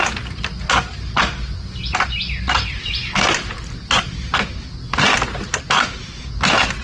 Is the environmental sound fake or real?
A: real